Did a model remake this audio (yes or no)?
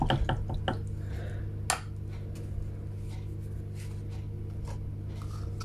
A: no